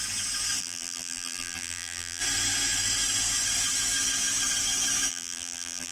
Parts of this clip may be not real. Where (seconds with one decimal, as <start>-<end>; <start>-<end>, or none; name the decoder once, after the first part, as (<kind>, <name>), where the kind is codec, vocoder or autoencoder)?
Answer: 0.6-2.2 (vocoder, BigVGAN v2); 5.1-5.9